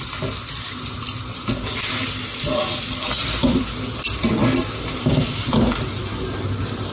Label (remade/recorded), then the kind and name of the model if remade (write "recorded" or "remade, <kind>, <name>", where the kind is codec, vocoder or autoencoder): recorded